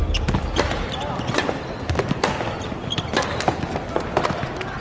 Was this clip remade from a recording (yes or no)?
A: no